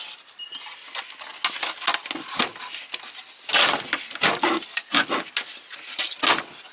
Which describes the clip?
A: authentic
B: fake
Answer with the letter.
A